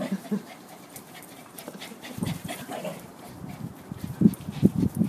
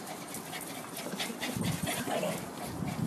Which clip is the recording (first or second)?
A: second